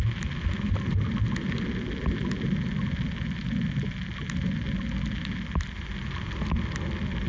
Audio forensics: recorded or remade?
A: recorded